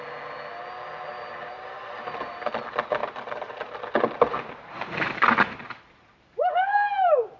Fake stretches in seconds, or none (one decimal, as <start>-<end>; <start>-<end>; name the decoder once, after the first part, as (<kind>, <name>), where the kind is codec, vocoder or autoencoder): 1.1-1.8 (vocoder, BigVGAN v2); 3.0-7.4